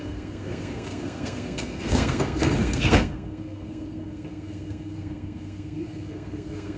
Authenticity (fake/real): fake